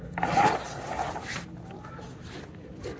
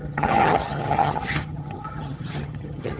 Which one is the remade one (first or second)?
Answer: second